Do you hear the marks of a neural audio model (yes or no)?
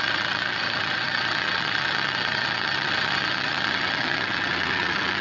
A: yes